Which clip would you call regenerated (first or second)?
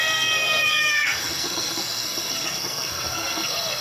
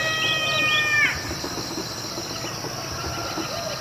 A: first